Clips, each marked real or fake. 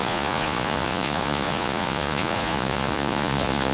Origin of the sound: fake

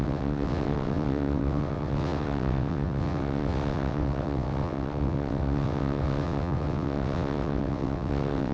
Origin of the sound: fake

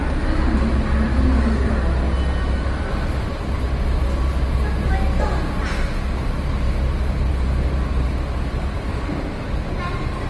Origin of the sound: real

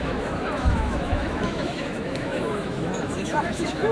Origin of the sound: fake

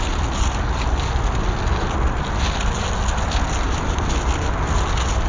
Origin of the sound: real